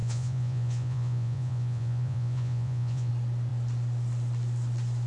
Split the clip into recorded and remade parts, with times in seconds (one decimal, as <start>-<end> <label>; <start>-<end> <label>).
0.0-3.1 remade; 3.1-5.1 recorded